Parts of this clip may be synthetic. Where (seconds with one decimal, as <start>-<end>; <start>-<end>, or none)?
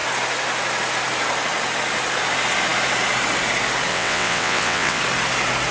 3.9-5.0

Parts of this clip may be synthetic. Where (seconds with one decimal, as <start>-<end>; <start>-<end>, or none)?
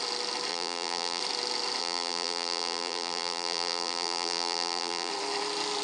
0.5-1.2; 1.8-5.1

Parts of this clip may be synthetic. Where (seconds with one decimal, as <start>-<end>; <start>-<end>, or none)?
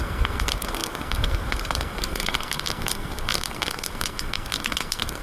0.0-5.2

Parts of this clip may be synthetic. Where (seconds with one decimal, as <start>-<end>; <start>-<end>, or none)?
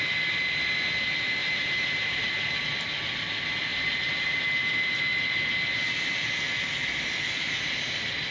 1.4-2.6; 3.7-4.4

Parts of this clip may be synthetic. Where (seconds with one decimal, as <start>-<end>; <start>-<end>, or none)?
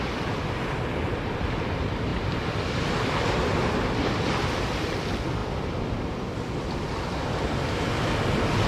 none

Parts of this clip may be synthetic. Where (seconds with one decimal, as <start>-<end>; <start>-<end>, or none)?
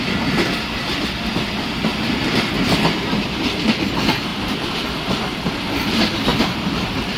1.9-3.7; 4.3-5.2; 6.3-7.2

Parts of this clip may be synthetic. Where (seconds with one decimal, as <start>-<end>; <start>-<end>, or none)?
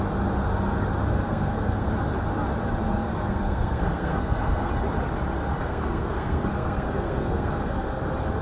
1.1-1.9; 2.9-4.7; 5.6-8.0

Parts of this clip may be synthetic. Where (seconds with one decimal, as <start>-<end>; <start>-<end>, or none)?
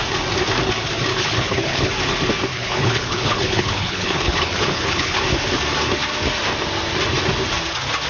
1.1-1.9; 2.5-5.2